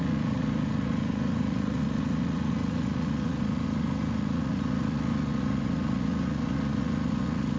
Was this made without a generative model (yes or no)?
no